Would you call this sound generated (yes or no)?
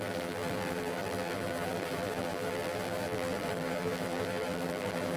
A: yes